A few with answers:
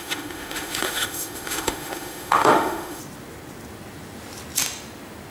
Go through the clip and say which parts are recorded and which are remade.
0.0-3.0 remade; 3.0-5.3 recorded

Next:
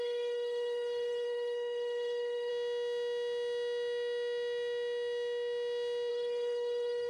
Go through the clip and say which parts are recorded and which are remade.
0.0-2.5 remade; 2.5-6.1 recorded; 6.1-7.1 remade

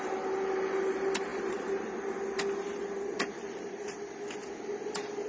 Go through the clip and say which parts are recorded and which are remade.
0.0-5.3 recorded

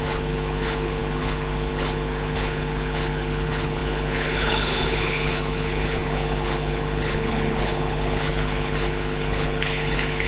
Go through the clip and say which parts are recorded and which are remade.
0.0-10.3 remade

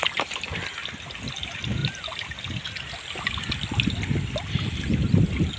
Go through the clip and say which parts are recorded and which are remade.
0.0-5.6 recorded

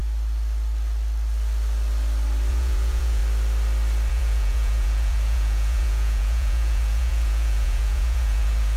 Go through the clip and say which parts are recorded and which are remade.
0.0-2.5 recorded; 2.5-3.2 remade; 3.2-4.1 recorded; 4.1-8.8 remade

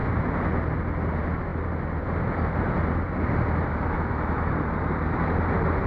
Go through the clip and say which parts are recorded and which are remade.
0.0-3.7 recorded; 3.7-4.5 remade; 4.5-5.9 recorded

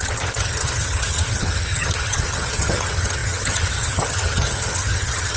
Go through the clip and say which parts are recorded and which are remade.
0.0-5.4 remade